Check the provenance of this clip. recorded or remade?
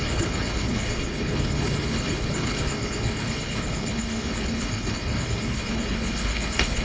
remade